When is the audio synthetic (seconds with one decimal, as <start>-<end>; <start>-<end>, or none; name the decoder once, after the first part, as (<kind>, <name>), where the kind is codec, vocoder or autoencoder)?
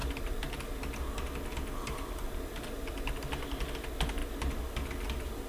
none